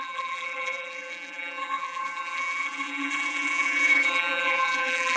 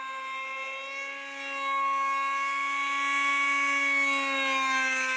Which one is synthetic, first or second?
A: first